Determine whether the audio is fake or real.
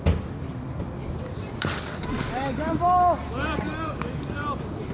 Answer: real